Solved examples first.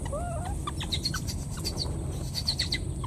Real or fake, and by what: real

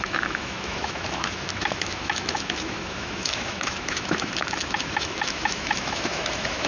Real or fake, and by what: fake, autoencoder, DAC-VAE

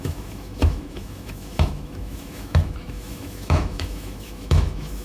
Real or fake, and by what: fake, autoencoder, DAC-VAE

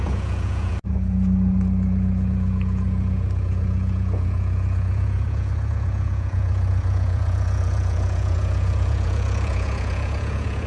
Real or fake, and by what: fake, vocoder, Vocos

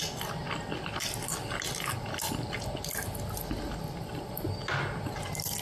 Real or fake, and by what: real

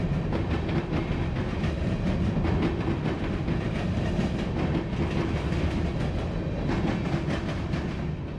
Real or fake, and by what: real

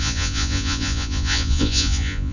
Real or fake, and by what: fake, vocoder, Vocos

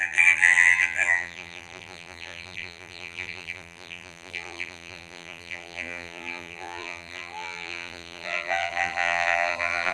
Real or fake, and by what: fake, vocoder, BigVGAN v2